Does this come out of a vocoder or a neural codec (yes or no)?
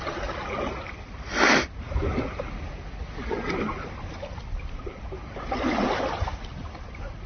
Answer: no